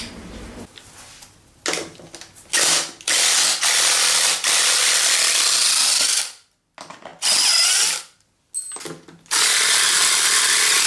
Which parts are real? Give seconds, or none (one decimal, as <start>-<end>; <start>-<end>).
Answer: 0.0-10.9